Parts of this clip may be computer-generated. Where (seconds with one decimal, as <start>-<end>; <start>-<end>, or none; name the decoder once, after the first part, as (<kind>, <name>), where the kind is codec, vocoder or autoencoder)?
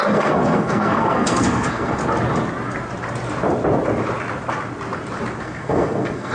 0.0-2.0 (codec, SNAC); 5.4-6.3